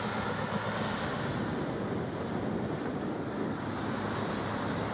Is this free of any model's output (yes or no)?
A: yes